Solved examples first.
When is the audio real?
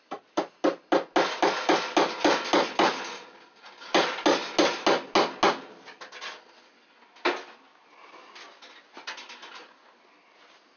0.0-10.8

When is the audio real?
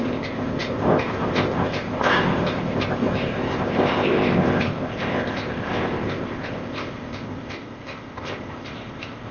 none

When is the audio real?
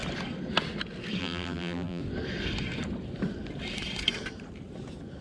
0.0-1.2; 2.0-5.2